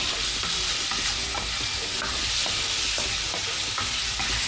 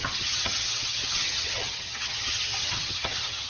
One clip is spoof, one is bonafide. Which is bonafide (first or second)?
first